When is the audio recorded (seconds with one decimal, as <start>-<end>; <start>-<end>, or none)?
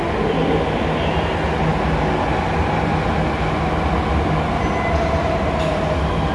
0.0-6.3